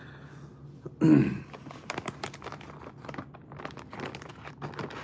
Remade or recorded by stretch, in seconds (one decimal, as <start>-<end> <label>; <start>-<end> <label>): 0.0-5.0 recorded